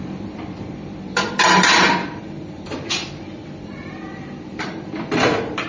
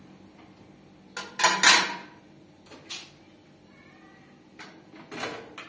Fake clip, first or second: first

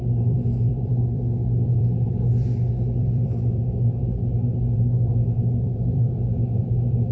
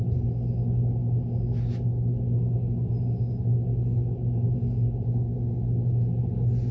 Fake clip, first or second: first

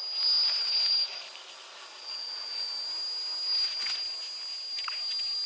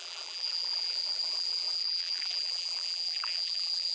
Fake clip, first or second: second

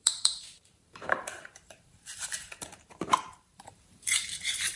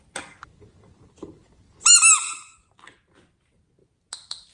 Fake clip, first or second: first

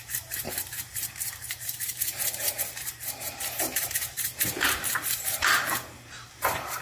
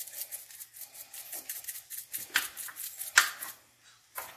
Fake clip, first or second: first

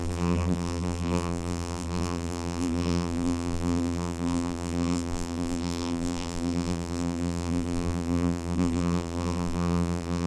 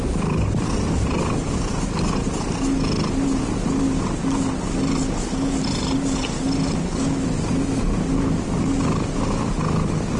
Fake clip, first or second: first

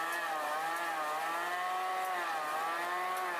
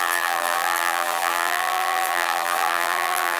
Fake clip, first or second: second